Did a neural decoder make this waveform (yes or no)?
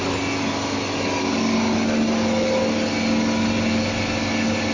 no